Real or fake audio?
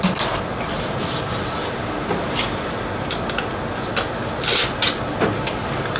real